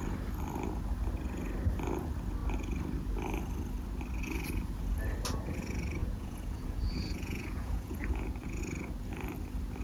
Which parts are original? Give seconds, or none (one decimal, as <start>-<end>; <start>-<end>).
0.0-6.0; 8.6-9.8

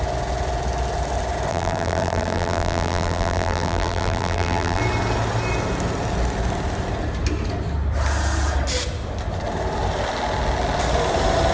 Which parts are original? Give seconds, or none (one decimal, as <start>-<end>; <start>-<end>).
0.0-1.5; 4.8-11.5

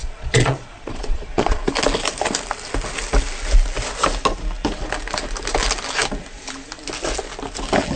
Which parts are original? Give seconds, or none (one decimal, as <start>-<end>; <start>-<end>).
1.6-8.0

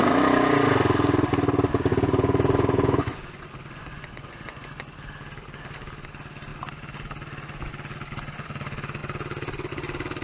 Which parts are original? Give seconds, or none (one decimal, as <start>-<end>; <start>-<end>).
0.0-1.9; 4.7-10.2